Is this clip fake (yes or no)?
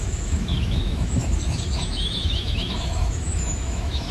yes